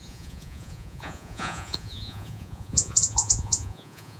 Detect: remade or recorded remade